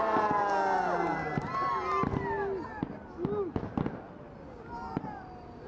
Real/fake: real